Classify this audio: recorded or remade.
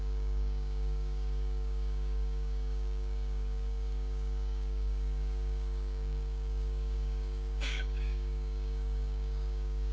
remade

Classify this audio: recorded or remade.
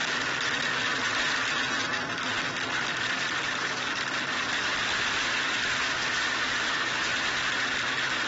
recorded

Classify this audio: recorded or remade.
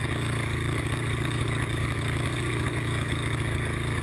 remade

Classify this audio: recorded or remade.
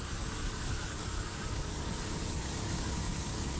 remade